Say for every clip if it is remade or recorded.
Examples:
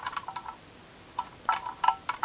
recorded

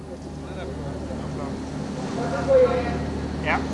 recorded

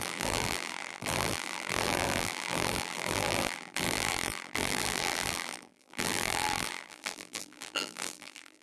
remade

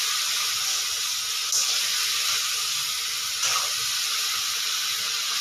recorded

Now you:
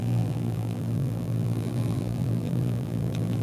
remade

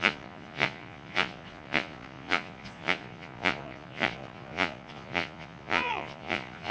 remade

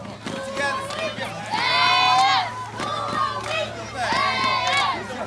recorded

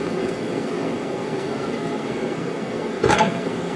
remade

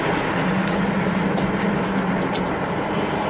recorded